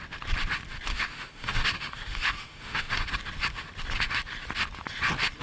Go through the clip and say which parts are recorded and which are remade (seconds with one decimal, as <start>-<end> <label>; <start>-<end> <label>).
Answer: 0.0-0.9 recorded; 0.9-3.1 remade; 3.1-5.4 recorded